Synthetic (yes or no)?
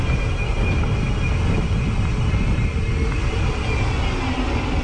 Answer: no